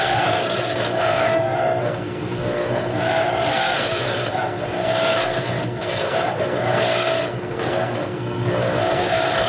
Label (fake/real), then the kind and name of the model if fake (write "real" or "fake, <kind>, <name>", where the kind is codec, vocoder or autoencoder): fake, codec, SNAC